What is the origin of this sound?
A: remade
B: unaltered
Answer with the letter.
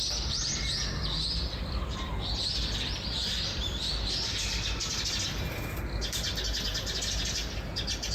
B